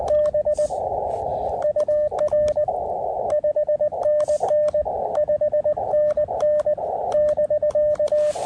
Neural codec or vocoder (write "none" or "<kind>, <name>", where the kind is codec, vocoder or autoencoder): none